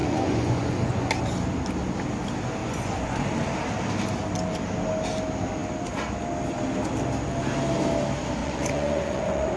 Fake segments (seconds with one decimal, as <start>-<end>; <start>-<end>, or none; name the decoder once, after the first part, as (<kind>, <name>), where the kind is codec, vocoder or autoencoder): 0.0-1.1 (vocoder, Vocos); 2.6-3.2; 8.4-9.6